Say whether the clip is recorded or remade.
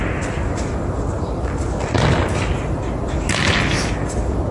recorded